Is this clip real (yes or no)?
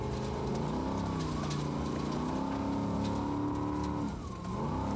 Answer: yes